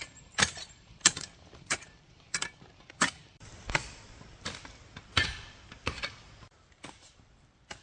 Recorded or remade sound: remade